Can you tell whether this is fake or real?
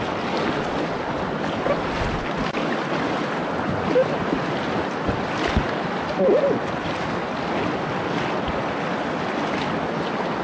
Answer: real